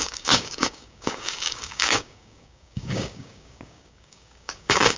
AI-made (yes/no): yes